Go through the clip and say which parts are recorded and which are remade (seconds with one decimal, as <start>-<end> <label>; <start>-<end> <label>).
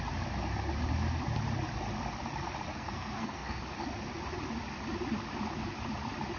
0.0-2.7 recorded; 2.7-3.6 remade; 3.6-6.4 recorded